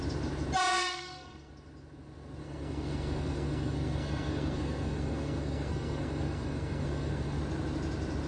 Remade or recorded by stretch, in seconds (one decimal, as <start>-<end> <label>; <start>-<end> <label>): 0.0-0.7 recorded; 0.7-1.5 remade; 1.5-2.4 recorded; 2.4-7.4 remade; 7.4-8.3 recorded